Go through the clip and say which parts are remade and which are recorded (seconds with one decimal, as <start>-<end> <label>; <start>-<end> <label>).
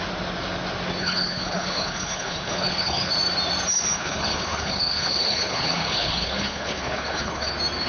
0.0-1.0 recorded; 1.0-3.1 remade; 3.1-3.7 recorded; 3.7-7.5 remade; 7.5-7.9 recorded